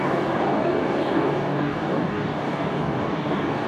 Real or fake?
fake